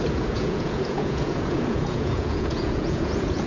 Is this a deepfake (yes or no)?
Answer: yes